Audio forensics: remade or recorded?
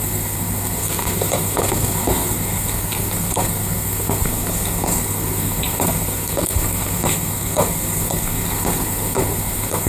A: remade